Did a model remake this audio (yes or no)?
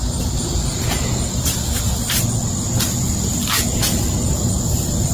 no